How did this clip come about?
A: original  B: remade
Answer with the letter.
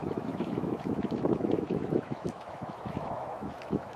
B